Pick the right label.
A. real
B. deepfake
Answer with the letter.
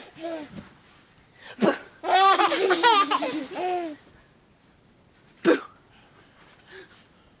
A